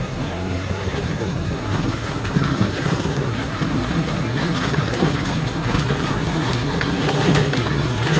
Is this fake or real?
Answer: fake